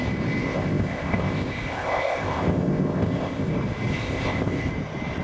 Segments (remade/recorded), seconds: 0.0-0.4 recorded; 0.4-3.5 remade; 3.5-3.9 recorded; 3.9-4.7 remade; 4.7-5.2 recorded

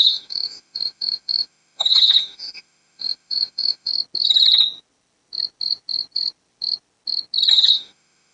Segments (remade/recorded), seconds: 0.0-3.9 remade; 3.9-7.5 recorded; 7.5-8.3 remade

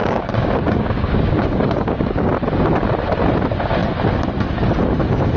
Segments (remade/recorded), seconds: 0.0-2.3 remade; 2.3-5.4 recorded

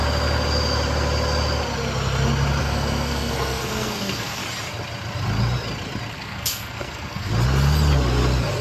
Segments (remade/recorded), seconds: 0.0-2.6 recorded; 2.6-4.4 remade; 4.4-6.1 recorded; 6.1-7.3 remade; 7.3-8.6 recorded

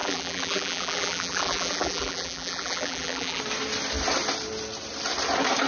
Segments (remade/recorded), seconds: 0.0-3.4 remade; 3.4-5.7 recorded

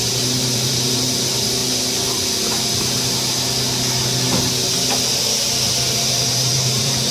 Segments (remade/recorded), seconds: 0.0-1.6 remade; 1.6-5.9 recorded; 5.9-7.1 remade

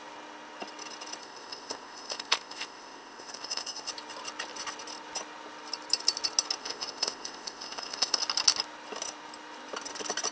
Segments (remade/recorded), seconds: 0.0-1.2 recorded; 1.2-3.9 remade; 3.9-6.6 recorded; 6.6-8.2 remade; 8.2-10.3 recorded

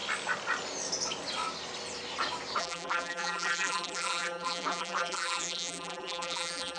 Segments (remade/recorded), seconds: 0.0-2.6 recorded; 2.6-6.8 remade